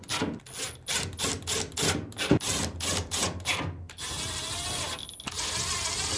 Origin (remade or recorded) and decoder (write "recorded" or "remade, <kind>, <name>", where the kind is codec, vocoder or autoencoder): recorded